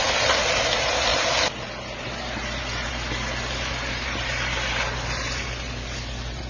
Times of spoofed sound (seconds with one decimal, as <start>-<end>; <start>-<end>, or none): none